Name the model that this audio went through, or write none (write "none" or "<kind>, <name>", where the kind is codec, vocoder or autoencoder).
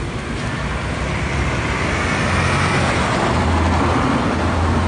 none